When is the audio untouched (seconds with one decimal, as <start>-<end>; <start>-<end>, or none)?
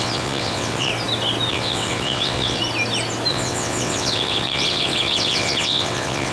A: 0.9-1.5; 2.6-3.3